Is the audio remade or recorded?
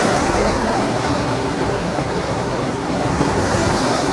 remade